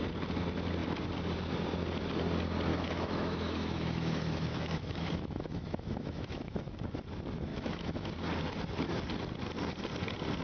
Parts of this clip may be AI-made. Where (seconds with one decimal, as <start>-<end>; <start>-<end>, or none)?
2.7-6.9; 7.5-8.1